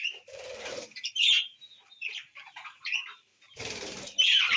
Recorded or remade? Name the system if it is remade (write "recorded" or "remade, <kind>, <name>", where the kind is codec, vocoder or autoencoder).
remade, vocoder, BigVGAN v2